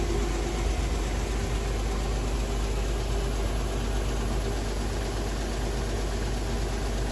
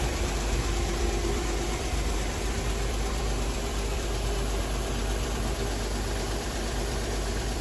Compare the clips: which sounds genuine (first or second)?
first